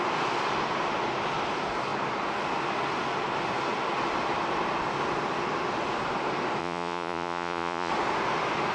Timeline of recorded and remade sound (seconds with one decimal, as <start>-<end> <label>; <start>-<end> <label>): 0.0-6.6 recorded; 6.6-7.9 remade; 7.9-8.7 recorded